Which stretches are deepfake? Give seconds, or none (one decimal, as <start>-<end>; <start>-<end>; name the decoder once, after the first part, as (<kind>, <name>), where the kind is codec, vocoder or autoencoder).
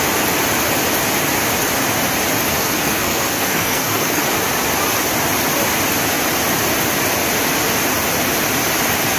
2.5-4.2 (codec, SNAC)